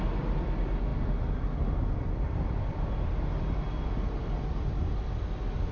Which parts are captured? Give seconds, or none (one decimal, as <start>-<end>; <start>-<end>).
0.0-5.7